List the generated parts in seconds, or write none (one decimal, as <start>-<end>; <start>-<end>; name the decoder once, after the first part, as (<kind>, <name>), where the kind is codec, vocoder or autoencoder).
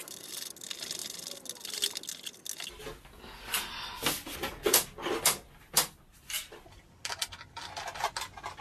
none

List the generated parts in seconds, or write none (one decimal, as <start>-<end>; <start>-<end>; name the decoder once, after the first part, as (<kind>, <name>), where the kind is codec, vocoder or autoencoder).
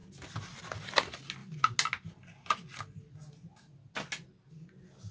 none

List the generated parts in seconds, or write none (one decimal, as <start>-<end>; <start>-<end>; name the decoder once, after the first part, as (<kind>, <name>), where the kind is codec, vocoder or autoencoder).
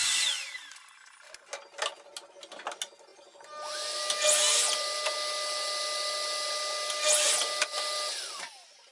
none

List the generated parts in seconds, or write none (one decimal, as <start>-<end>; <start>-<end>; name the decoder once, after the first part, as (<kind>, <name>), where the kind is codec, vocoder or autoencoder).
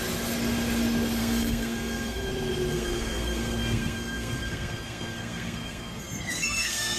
1.2-2.3 (codec, SNAC); 2.7-7.0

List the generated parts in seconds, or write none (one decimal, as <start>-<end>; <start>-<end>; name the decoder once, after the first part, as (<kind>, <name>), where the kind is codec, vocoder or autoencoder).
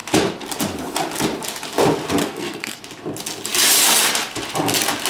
2.2-2.8 (codec, SNAC)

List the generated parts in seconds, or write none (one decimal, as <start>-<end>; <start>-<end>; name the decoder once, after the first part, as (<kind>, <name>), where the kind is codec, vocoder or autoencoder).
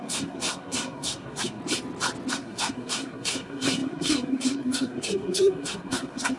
0.0-1.6 (codec, SNAC); 2.3-6.4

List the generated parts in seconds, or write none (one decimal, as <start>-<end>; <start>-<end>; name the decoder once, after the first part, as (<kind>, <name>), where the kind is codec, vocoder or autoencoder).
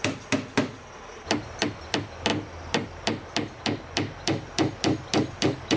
none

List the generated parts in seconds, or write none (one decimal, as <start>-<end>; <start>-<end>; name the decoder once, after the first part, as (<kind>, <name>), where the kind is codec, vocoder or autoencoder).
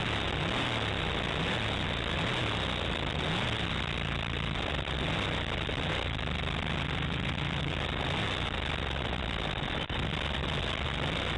none